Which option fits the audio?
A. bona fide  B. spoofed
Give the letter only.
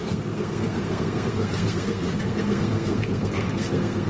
B